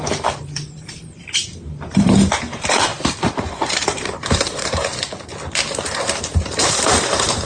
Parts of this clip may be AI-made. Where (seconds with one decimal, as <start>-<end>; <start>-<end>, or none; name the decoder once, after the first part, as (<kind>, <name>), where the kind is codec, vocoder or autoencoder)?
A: 0.0-2.9 (vocoder, BigVGAN v2); 3.7-4.9; 6.4-7.5